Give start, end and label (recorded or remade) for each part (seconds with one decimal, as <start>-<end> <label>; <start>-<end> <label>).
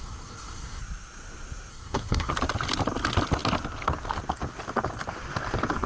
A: 0.0-0.8 remade; 0.8-1.7 recorded; 1.7-2.3 remade; 2.3-5.9 recorded